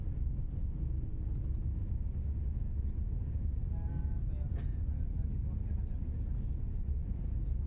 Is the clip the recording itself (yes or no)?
yes